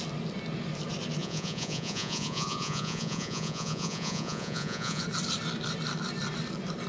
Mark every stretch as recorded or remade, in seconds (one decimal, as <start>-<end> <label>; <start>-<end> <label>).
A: 0.0-1.2 recorded; 1.2-5.0 remade; 5.0-6.9 recorded